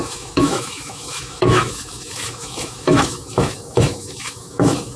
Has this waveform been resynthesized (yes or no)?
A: yes